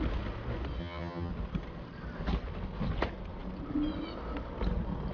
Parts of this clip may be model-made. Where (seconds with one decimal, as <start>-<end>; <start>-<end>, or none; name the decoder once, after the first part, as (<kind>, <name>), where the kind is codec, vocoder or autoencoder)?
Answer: 0.8-1.3 (vocoder, HiFi-GAN)